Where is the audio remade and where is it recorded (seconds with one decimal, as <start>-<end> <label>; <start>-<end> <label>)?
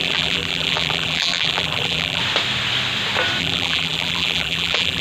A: 0.0-2.2 remade; 2.2-3.4 recorded; 3.4-5.0 remade